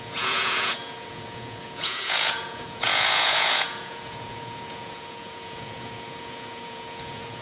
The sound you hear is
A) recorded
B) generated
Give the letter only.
B